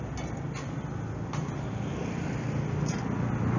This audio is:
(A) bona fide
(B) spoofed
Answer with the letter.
A